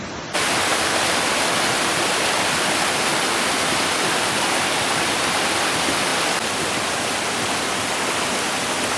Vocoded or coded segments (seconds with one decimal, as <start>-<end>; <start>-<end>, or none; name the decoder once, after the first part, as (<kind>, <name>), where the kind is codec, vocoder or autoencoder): none